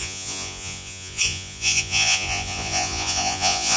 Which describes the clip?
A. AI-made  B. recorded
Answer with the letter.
A